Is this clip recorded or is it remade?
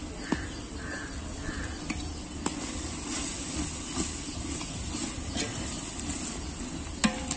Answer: recorded